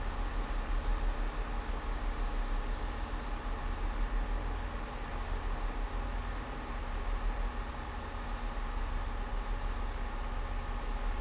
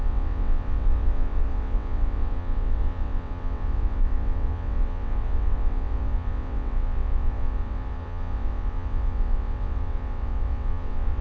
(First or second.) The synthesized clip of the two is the second